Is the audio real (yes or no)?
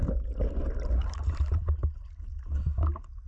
yes